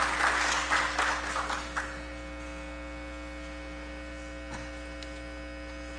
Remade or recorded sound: recorded